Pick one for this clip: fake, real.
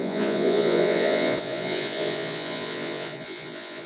fake